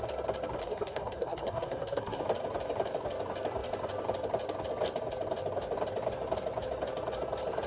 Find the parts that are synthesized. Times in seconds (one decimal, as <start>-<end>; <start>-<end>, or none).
0.6-2.2